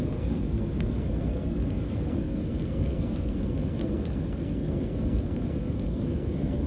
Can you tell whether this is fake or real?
fake